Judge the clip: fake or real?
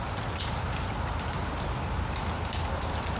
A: fake